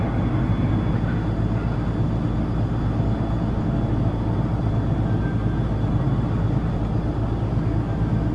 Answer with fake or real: real